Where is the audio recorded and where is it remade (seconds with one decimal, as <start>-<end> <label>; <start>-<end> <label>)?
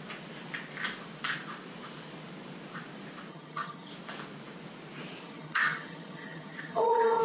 0.0-3.3 recorded; 3.3-3.9 remade; 3.9-5.2 recorded; 5.2-7.2 remade